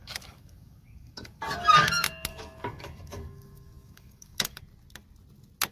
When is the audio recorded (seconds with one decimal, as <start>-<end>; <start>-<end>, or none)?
1.4-2.3; 4.6-5.7